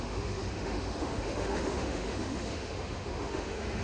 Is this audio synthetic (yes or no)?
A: yes